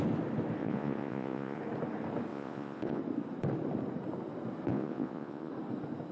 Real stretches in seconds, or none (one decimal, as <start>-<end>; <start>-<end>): 0.0-0.6; 1.6-2.3; 3.0-4.7; 5.5-6.1

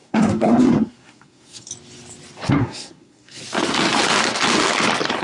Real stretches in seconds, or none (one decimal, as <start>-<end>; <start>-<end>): 1.7-2.5; 3.4-5.2

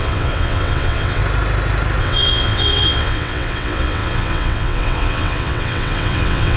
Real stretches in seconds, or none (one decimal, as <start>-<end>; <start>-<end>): 1.2-2.0

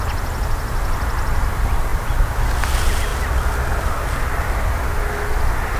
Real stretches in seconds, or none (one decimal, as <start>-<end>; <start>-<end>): 0.0-5.8

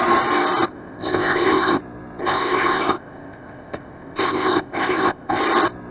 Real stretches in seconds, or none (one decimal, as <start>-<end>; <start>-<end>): 0.0-0.7; 1.8-2.2; 5.4-5.9